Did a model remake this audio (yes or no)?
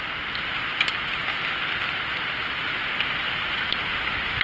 no